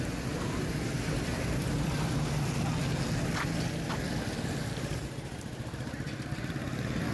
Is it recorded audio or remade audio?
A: recorded